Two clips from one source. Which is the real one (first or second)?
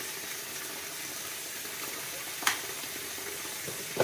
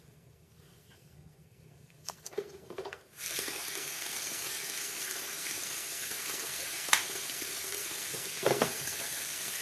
first